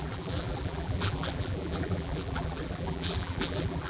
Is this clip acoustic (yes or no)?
no